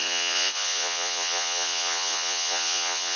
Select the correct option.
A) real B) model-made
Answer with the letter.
B